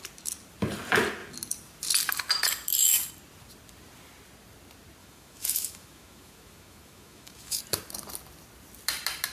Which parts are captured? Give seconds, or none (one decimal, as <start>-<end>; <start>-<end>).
0.0-5.0; 7.6-9.3